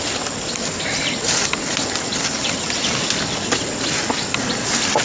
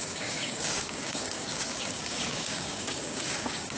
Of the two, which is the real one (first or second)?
first